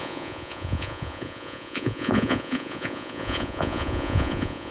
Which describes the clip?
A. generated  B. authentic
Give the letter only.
A